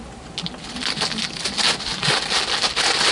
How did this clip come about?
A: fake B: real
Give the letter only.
B